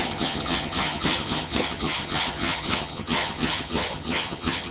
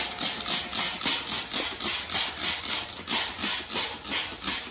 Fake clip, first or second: first